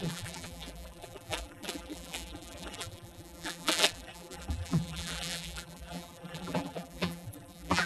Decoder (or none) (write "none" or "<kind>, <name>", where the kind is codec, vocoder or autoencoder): vocoder, BigVGAN v2